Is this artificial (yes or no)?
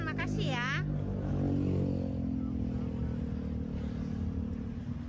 no